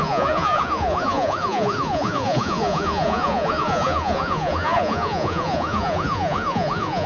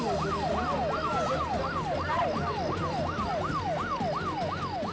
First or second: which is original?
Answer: second